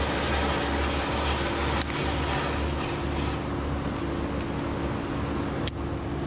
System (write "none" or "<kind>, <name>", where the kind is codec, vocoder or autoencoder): none